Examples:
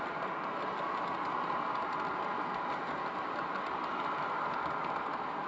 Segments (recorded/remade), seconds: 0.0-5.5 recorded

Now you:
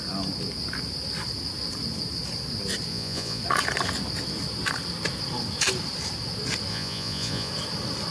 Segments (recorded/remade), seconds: 0.0-2.9 recorded; 2.9-3.4 remade; 3.4-6.7 recorded; 6.7-7.5 remade; 7.5-8.1 recorded

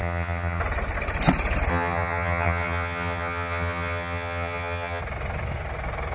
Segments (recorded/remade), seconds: 0.0-0.6 remade; 0.6-1.7 recorded; 1.7-5.0 remade; 5.0-6.1 recorded

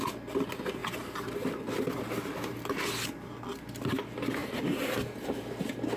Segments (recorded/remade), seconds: 0.0-6.0 recorded

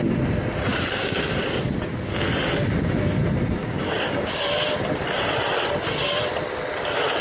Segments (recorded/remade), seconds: 0.0-0.7 recorded; 0.7-1.3 remade; 1.3-3.6 recorded; 3.6-4.4 remade; 4.4-7.2 recorded